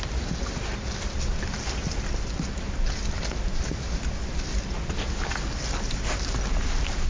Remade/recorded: recorded